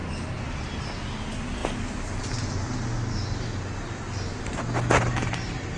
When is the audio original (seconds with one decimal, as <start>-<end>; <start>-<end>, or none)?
1.0-5.8